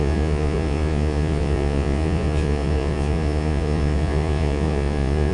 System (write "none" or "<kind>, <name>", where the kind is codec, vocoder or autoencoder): vocoder, Vocos